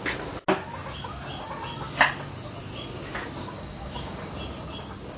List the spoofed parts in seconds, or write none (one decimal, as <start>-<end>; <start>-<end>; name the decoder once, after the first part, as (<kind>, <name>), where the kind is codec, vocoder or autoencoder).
3.4-4.3 (codec, DAC)